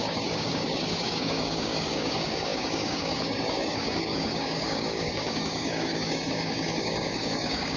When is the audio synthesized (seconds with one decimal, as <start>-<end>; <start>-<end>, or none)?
0.0-7.8